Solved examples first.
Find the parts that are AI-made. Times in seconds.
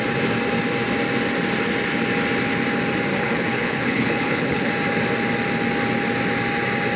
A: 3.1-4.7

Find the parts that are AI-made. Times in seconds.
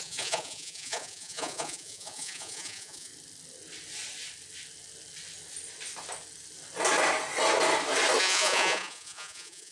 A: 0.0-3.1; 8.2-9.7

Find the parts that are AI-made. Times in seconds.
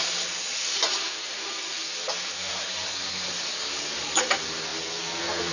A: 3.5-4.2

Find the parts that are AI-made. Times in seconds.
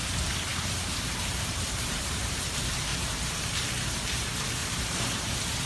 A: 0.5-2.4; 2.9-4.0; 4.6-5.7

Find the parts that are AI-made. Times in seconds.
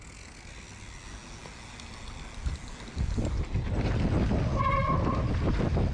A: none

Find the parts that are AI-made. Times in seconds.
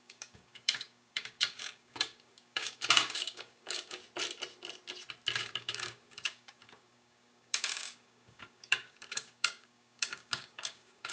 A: 0.0-4.0; 5.4-11.1